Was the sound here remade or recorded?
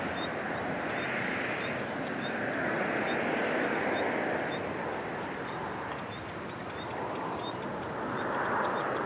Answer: remade